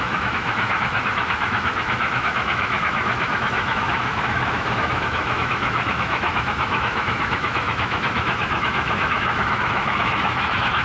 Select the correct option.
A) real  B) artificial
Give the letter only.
B